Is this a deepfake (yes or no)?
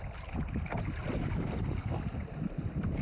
no